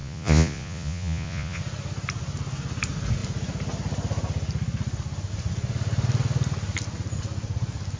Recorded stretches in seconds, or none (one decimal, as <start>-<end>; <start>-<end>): 1.6-8.0